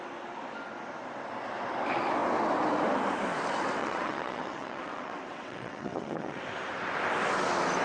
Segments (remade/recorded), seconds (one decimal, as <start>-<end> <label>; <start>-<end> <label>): 0.0-3.8 recorded; 3.8-6.4 remade; 6.4-7.8 recorded